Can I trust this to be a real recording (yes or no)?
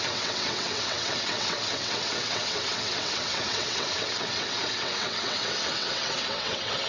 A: no